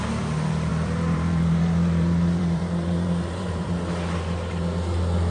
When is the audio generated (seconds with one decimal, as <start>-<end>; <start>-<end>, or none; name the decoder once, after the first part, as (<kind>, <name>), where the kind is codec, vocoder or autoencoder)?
0.7-3.9 (vocoder, BigVGAN v2)